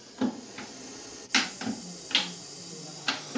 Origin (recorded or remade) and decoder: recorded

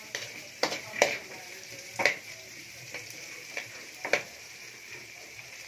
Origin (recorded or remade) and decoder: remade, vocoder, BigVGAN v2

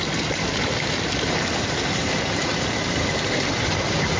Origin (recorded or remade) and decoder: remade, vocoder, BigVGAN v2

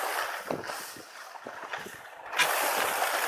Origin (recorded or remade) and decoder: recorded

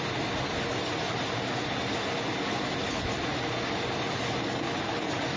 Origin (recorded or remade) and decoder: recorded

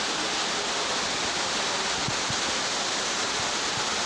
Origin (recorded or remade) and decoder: recorded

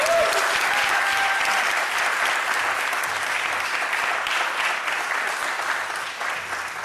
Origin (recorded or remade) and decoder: recorded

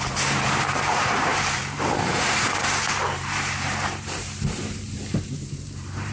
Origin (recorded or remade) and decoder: remade, vocoder, BigVGAN v2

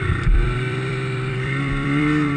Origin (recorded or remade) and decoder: remade, vocoder, BigVGAN v2